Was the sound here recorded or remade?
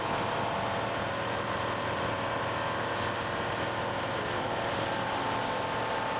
recorded